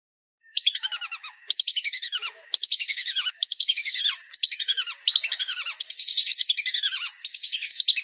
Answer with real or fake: fake